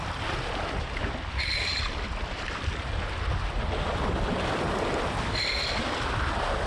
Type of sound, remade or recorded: recorded